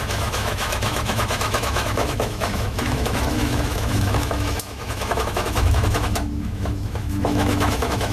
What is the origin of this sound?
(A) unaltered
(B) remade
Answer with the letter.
B